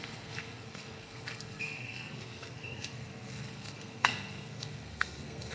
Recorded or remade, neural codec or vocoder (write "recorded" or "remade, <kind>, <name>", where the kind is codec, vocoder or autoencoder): remade, codec, SNAC